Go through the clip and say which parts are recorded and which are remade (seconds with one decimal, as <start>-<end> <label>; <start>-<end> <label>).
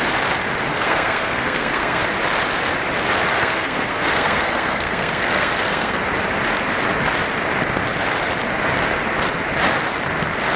0.0-0.7 recorded; 0.7-2.0 remade; 2.0-3.4 recorded; 3.4-6.0 remade; 6.0-10.6 recorded